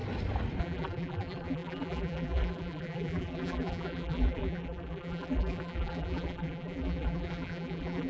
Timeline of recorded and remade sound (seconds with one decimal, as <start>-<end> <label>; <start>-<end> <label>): 0.0-0.6 recorded; 0.6-8.1 remade